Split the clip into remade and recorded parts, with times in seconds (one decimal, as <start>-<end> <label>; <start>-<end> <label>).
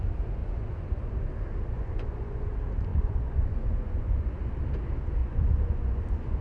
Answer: 0.0-0.4 recorded; 0.4-1.1 remade; 1.1-1.7 recorded; 1.7-2.5 remade; 2.5-2.9 recorded; 2.9-4.4 remade; 4.4-5.2 recorded; 5.2-6.4 remade